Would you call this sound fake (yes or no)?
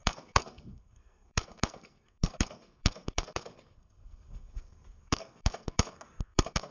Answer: yes